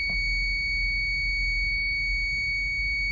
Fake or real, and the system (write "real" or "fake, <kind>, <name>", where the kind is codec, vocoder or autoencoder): real